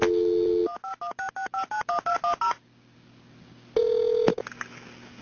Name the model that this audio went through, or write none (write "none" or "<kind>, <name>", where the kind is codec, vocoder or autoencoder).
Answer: none